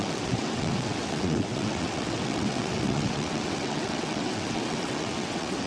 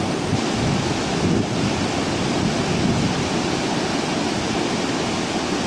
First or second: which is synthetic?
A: first